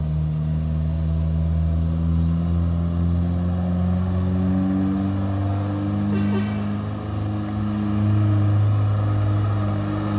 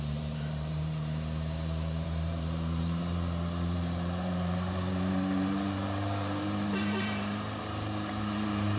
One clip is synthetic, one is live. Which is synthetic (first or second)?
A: second